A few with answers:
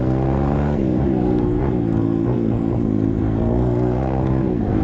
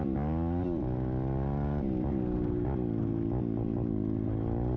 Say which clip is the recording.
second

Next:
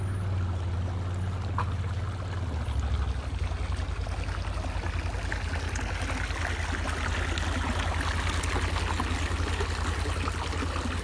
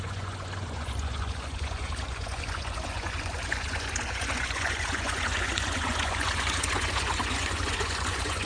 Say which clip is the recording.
first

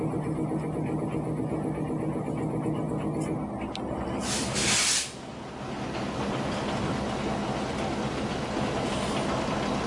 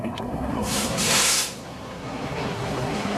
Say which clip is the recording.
first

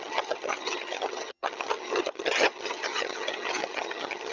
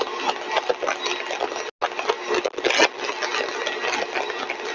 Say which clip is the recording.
second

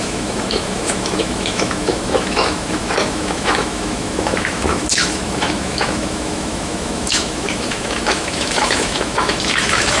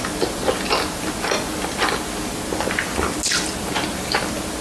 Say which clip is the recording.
second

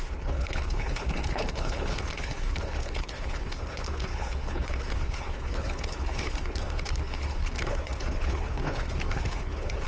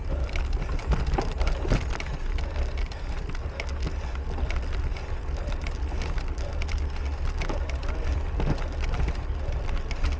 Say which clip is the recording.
second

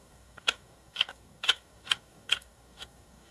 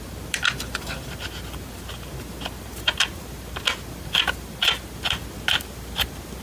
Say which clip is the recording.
second